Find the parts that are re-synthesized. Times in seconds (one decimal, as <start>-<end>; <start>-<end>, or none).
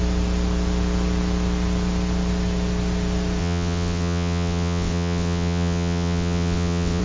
3.4-7.0